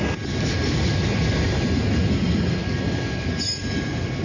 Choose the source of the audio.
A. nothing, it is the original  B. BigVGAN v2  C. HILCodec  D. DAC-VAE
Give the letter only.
A